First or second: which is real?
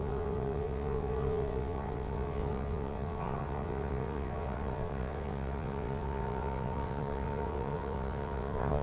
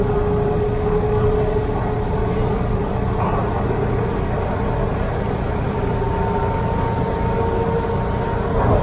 second